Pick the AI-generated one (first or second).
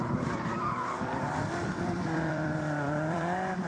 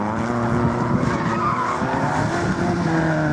first